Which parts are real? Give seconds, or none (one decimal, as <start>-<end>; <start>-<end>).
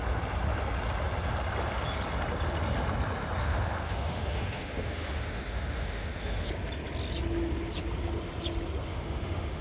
0.0-3.4; 6.5-8.9